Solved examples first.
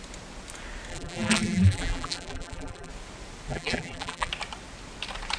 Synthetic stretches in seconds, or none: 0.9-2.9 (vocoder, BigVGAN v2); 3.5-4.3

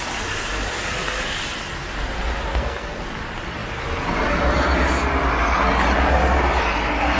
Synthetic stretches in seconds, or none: 2.5-3.0 (codec, SNAC)

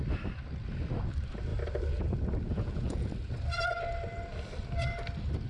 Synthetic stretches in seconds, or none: 2.5-3.1 (vocoder, Vocos)

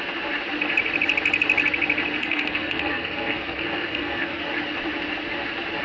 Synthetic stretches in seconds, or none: 2.2-4.4 (codec, SNAC)

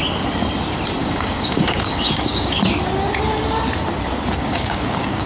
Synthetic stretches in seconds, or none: 1.0-2.6 (codec, DAC); 4.4-5.3

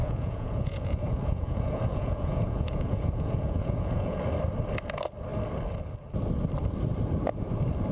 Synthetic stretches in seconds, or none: 0.0-4.2 (vocoder, Vocos)